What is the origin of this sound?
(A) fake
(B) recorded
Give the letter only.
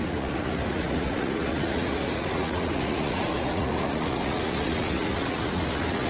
A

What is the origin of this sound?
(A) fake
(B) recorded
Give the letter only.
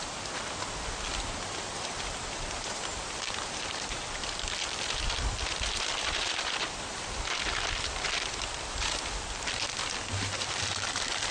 A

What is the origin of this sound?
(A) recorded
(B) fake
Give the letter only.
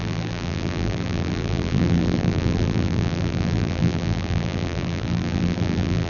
B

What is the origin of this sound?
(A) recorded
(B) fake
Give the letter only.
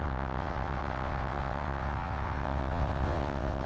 B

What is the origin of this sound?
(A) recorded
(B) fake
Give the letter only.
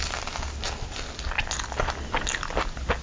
A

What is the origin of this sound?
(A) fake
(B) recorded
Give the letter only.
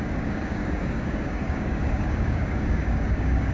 A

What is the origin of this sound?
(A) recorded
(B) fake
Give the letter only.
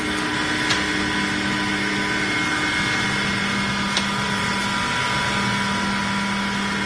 A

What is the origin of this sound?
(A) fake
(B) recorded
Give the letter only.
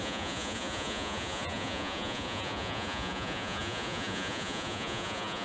A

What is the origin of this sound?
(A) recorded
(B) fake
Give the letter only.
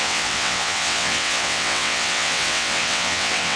B